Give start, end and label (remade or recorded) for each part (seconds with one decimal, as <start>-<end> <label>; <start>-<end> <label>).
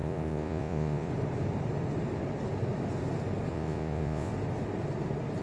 0.0-1.1 remade; 1.1-3.5 recorded; 3.5-4.3 remade; 4.3-5.4 recorded